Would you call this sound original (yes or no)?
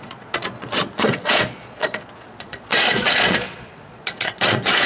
no